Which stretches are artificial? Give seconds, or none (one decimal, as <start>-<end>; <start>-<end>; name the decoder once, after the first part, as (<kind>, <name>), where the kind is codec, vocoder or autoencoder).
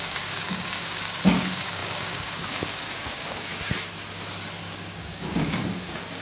0.0-3.5 (codec, DAC); 4.6-6.2